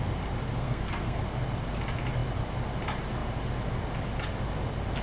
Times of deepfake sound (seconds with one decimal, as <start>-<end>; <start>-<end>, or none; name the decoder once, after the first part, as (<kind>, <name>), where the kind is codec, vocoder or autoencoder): 0.6-1.2 (codec, SNAC)